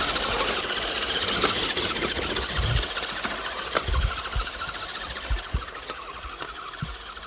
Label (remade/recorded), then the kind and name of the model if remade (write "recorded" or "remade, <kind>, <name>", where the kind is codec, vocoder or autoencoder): recorded